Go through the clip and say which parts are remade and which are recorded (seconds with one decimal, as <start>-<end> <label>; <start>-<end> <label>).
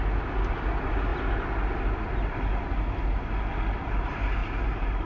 0.0-4.4 recorded; 4.4-5.1 remade